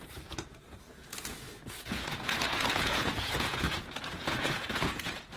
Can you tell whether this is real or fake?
fake